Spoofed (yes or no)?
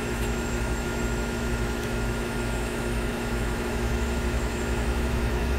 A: yes